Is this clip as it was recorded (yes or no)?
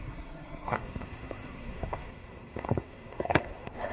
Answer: no